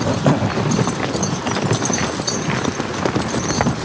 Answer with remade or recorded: recorded